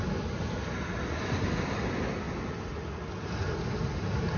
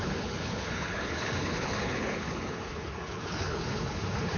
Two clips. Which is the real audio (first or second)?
first